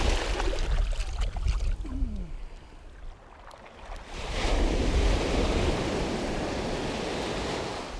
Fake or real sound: real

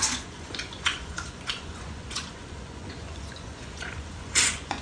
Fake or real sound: fake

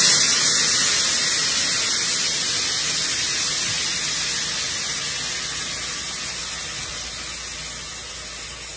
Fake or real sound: real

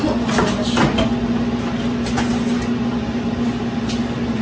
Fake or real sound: real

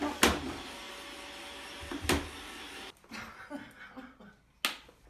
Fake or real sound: real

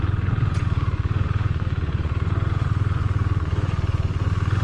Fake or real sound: fake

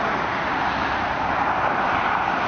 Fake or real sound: real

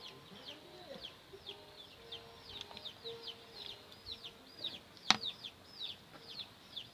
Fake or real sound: real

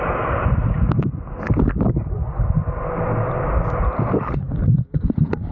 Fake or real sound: real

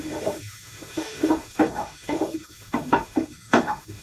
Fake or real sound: fake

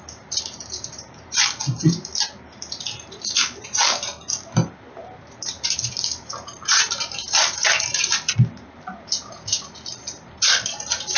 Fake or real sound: fake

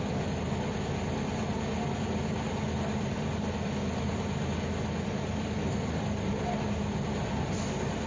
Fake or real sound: real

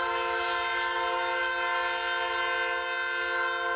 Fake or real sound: real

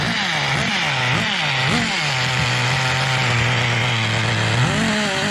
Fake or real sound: real